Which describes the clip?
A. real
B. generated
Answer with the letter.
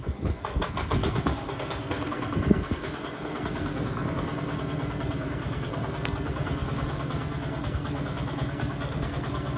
B